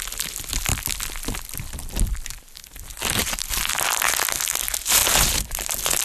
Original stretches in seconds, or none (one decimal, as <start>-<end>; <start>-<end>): 0.0-0.7; 2.4-5.0